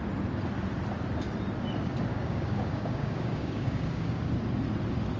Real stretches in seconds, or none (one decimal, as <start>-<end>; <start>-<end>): 0.0-2.1; 4.3-5.2